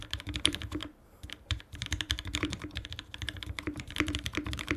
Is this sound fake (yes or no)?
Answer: yes